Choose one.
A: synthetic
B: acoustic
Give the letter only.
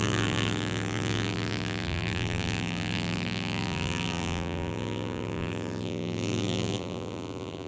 A